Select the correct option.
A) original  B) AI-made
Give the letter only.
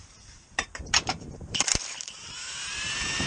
B